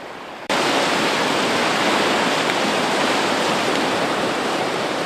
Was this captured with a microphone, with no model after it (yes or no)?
no